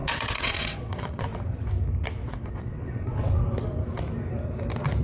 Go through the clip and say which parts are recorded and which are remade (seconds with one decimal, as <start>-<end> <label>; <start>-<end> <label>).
0.0-1.7 remade; 1.7-2.2 recorded; 2.2-3.4 remade; 3.4-5.0 recorded